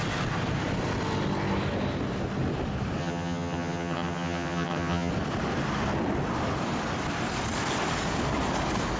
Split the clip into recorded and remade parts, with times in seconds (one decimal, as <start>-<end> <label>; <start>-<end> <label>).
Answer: 0.0-3.0 recorded; 3.0-5.1 remade; 5.1-9.0 recorded